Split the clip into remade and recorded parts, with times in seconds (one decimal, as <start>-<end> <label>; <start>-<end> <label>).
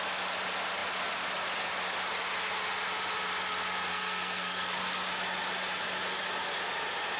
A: 0.0-3.9 recorded; 3.9-4.8 remade; 4.8-7.2 recorded